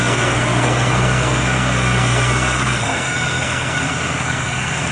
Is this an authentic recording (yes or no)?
no